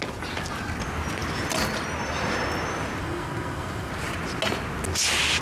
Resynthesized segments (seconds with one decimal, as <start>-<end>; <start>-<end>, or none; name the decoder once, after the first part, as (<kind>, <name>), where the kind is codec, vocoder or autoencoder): 3.0-3.9 (codec, SNAC)